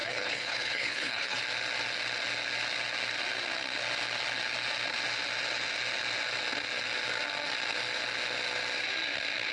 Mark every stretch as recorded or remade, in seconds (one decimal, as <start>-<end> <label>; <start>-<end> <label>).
0.0-1.4 remade; 1.4-9.5 recorded